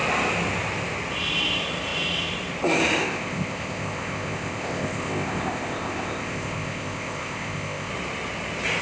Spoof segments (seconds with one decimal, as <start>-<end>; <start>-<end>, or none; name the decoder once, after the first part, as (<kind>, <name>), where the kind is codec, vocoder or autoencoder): 3.0-7.9 (codec, ZipCodec)